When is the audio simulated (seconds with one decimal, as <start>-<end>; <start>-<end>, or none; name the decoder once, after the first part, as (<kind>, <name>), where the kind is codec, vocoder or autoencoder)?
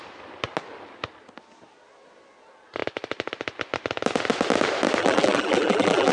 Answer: 5.0-6.1 (vocoder, BigVGAN v2)